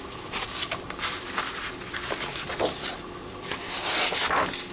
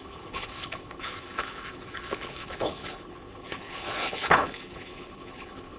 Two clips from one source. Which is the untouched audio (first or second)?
first